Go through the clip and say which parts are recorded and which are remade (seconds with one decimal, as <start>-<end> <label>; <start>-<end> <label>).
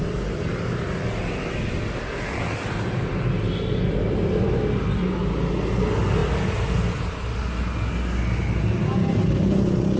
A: 0.0-10.0 recorded